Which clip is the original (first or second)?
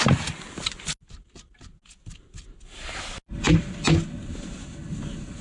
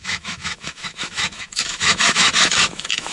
first